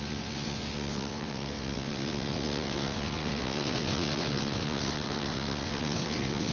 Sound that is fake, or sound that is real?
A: fake